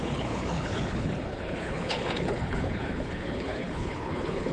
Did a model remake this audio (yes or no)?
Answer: yes